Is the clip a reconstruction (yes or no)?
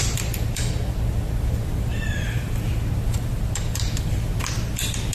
yes